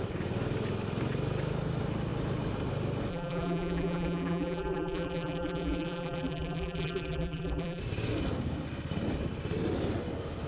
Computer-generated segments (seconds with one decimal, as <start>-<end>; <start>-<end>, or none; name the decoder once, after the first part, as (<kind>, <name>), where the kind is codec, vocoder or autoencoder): 3.1-7.8 (vocoder, BigVGAN v2)